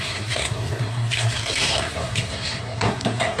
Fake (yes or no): yes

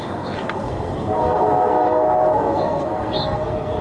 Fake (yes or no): yes